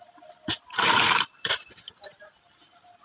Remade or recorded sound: recorded